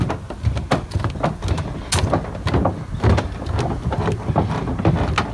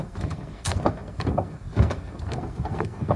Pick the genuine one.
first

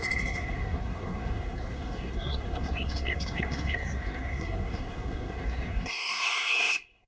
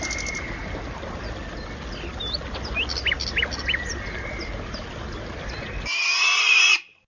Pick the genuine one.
second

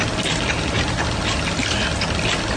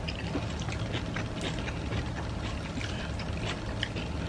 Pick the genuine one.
first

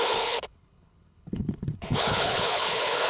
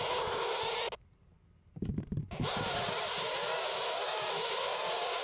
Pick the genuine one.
second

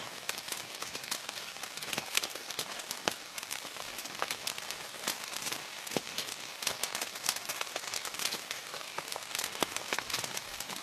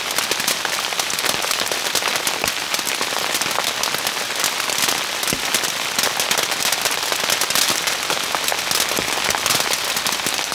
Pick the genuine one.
second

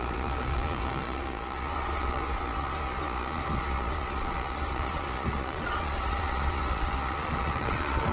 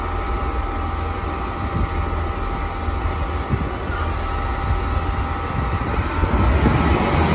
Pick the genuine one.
second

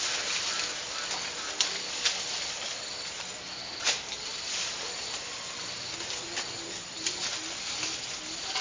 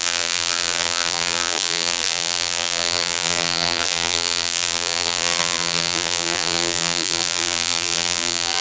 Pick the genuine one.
first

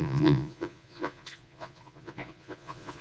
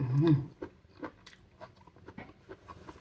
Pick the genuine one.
second